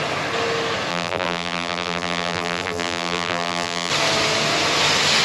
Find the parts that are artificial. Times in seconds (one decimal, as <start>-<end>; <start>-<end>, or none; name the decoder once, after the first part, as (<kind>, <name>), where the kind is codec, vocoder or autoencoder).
0.9-3.9 (vocoder, BigVGAN v2)